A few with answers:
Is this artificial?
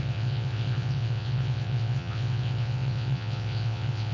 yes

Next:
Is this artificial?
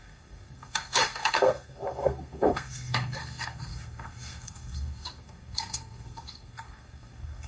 yes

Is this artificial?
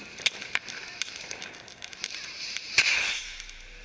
yes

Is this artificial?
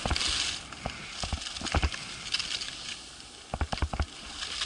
no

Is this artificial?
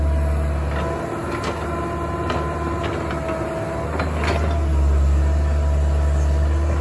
no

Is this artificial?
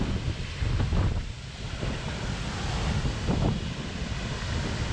no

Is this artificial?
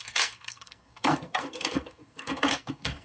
yes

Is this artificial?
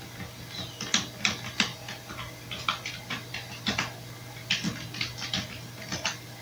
no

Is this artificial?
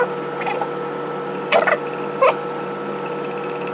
no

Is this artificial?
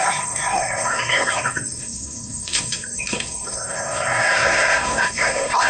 yes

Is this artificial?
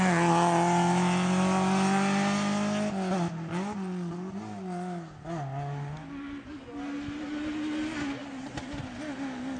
no